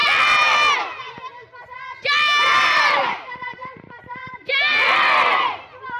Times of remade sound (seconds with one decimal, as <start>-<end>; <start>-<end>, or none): 2.8-6.0